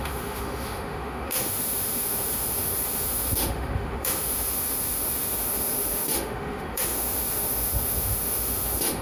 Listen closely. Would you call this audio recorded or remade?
remade